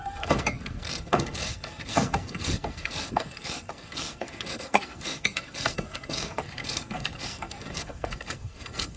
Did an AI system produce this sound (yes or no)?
yes